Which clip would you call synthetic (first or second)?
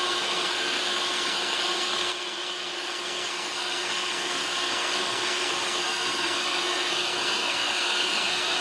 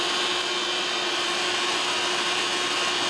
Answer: first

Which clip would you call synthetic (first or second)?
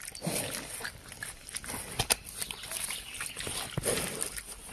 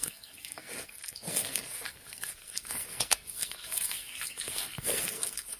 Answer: second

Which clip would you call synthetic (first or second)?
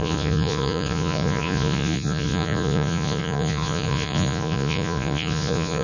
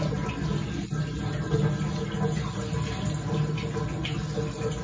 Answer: first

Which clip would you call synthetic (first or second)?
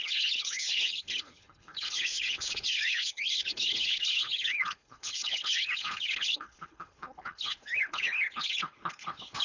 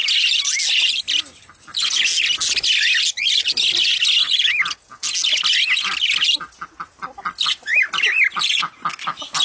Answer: first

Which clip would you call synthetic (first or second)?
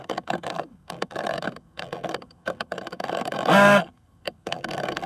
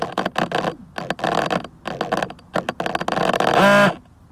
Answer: first